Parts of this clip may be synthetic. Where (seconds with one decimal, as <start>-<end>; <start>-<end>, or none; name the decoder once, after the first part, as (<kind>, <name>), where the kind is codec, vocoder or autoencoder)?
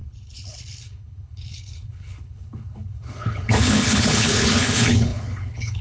0.0-5.8 (codec, HILCodec)